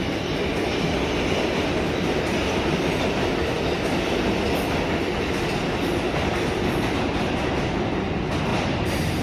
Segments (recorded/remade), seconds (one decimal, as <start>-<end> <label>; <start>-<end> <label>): 0.0-7.1 recorded; 7.1-7.6 remade; 7.6-8.5 recorded; 8.5-9.2 remade